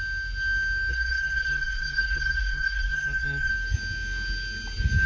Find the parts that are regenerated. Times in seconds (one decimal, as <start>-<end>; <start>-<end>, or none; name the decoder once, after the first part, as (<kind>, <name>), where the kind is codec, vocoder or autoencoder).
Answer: 0.9-3.5 (codec, SNAC)